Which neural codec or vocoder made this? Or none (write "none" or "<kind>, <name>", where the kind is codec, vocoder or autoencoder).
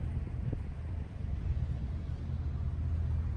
none